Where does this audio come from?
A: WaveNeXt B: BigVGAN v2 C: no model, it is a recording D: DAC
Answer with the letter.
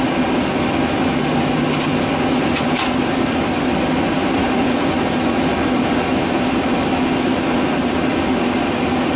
C